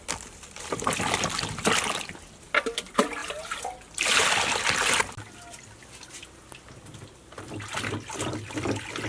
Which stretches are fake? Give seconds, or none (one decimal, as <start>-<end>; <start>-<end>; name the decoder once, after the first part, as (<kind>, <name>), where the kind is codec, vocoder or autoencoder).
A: 3.2-5.0 (vocoder, BigVGAN v2)